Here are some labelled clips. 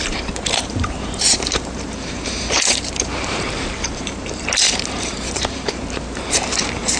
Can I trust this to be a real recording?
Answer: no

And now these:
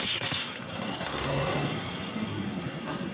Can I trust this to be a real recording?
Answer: no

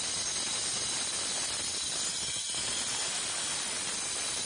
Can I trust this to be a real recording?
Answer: yes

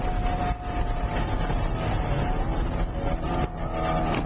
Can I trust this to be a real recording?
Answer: yes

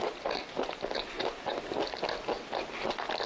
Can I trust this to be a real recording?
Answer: yes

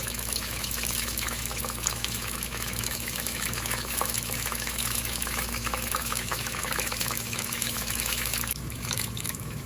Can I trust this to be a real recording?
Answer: no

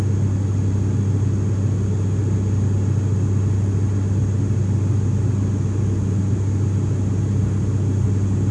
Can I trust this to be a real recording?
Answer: yes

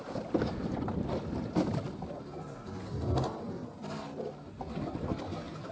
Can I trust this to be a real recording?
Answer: yes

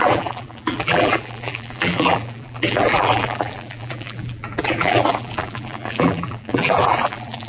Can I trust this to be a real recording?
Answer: no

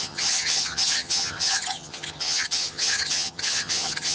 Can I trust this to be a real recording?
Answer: no